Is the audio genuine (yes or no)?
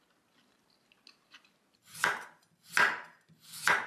yes